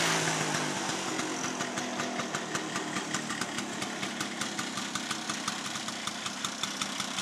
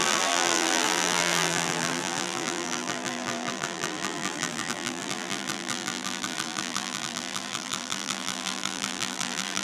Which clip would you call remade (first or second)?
second